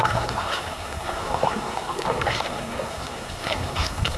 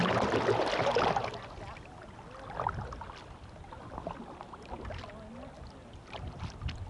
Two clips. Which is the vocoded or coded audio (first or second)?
first